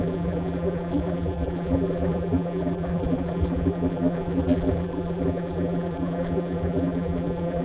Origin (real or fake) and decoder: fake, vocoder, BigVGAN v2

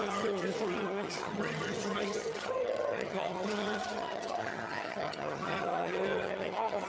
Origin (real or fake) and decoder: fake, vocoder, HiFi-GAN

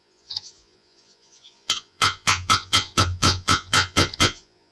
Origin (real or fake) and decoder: fake, vocoder, Vocos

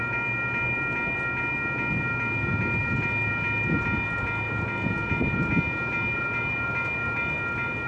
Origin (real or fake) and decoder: real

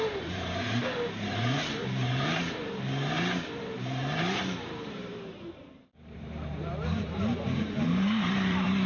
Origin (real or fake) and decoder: fake, vocoder, BigVGAN v2